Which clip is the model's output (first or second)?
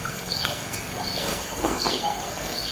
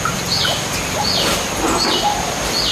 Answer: first